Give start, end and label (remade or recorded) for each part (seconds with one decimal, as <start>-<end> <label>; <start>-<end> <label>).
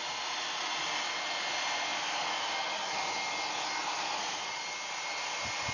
0.0-5.7 recorded